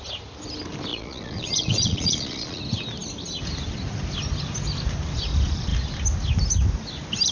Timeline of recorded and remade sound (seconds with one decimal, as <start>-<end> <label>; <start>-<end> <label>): 0.0-0.9 recorded; 0.9-2.6 remade; 2.6-7.3 recorded